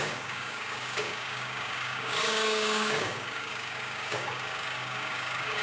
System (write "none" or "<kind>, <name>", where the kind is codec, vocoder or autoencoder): codec, DAC